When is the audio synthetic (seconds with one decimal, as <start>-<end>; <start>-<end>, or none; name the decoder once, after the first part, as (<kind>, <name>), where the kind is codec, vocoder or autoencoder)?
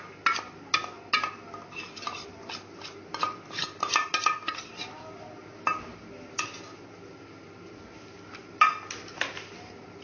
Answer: none